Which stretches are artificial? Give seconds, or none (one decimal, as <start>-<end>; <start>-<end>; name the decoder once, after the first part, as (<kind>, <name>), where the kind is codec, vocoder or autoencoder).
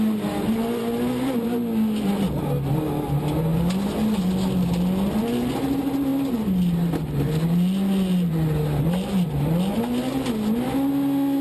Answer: none